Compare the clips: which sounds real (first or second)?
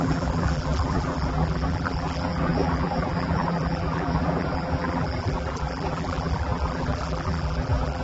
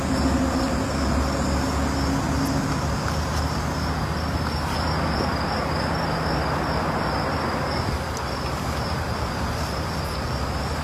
second